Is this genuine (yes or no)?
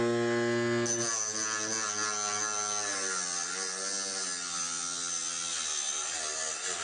yes